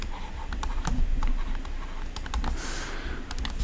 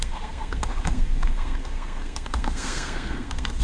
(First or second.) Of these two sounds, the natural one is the first